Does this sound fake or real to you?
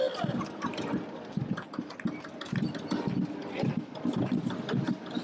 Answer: real